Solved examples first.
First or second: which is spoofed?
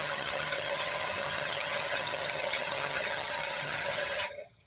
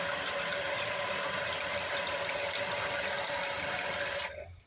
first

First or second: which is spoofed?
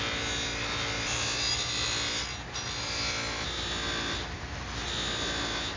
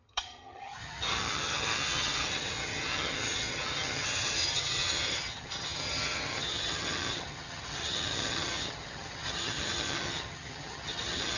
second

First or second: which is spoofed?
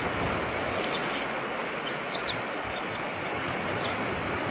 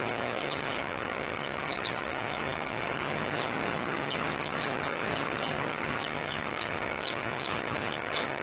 second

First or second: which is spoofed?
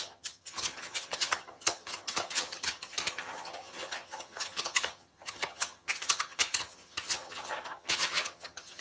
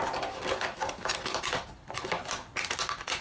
first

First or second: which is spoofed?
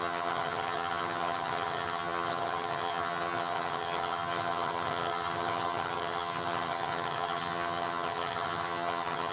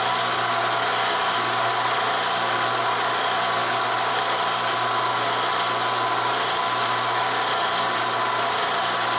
first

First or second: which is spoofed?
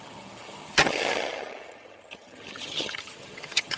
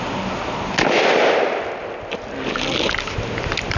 first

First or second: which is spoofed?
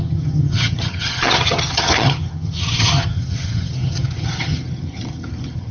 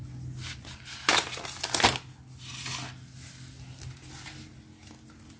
first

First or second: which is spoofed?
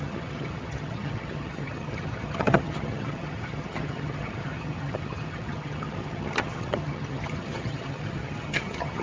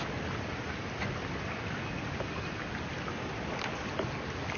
first